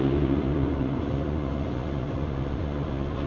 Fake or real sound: fake